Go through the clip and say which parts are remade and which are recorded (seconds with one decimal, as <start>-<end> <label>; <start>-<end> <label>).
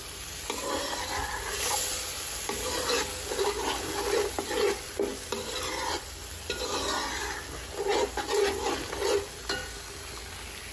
0.0-10.7 recorded